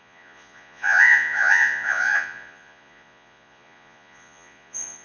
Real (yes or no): no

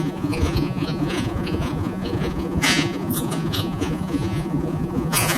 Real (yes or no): no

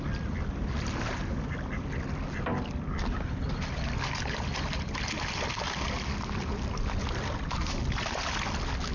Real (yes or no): yes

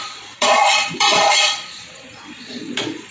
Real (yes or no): no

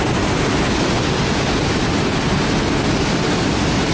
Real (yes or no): yes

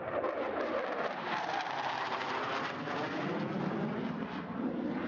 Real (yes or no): yes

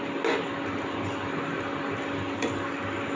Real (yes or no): yes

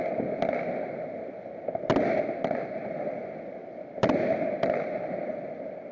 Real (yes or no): yes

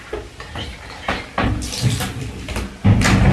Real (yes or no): yes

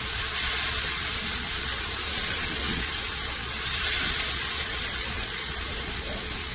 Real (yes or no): no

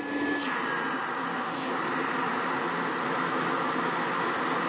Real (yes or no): yes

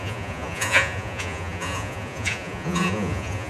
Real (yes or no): no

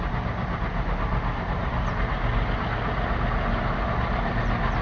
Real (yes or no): yes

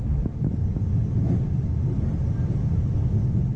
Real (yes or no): yes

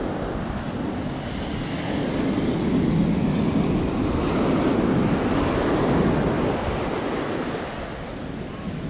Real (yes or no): yes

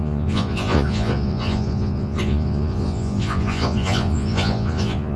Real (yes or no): no